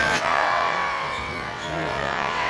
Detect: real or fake fake